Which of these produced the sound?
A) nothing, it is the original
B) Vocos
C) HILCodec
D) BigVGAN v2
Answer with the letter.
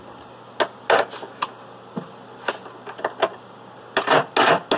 A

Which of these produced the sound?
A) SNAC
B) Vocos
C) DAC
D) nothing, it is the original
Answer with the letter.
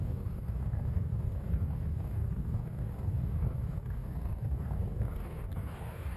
C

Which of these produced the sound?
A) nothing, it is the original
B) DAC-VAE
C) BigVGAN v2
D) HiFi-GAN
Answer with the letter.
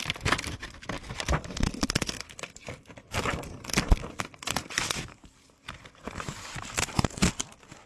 A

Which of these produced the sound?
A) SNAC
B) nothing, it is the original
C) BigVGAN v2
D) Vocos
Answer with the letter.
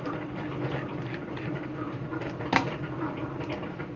C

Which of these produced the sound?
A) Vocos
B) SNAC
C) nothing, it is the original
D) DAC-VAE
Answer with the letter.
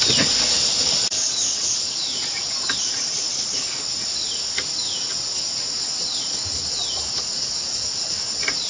C